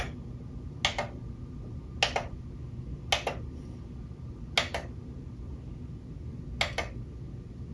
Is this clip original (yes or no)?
yes